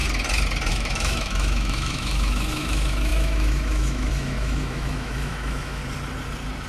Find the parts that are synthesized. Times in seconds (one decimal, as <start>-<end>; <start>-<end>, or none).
0.7-5.8